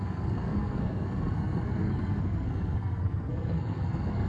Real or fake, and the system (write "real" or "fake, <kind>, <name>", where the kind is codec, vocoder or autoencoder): fake, codec, SNAC